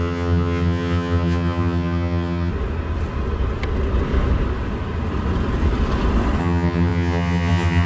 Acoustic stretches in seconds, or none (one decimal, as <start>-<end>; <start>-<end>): 2.5-6.4